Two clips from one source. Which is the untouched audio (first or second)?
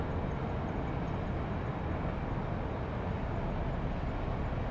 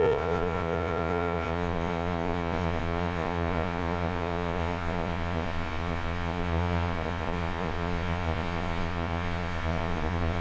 first